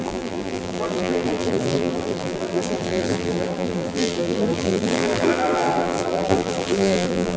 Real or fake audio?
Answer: fake